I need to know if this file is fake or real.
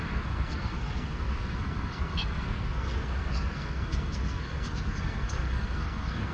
fake